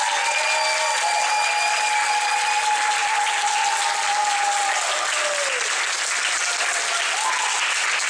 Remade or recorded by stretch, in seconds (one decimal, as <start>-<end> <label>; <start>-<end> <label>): 0.0-8.1 recorded